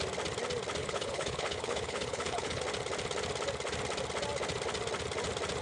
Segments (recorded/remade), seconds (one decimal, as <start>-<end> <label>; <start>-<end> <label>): 0.0-0.8 recorded; 0.8-2.6 remade; 2.6-5.6 recorded